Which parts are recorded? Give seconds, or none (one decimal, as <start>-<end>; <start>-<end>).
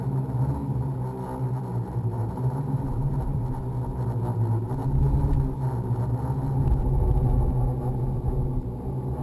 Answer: 0.0-1.7; 3.5-9.2